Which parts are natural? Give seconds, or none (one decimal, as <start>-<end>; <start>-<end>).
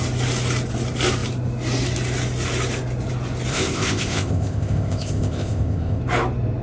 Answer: 0.0-3.5; 6.0-6.6